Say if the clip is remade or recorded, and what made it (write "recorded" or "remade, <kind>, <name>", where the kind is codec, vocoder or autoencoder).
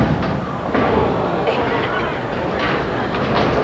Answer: recorded